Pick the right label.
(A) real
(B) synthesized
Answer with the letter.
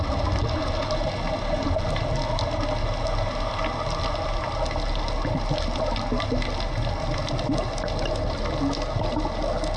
A